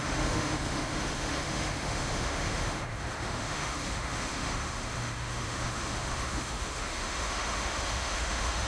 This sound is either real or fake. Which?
fake